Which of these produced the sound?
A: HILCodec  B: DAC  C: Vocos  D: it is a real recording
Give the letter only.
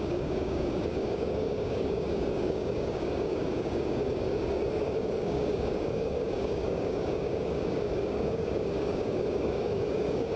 B